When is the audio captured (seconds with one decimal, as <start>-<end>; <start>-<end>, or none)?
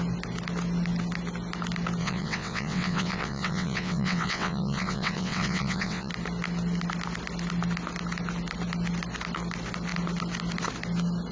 0.0-2.0; 6.1-11.3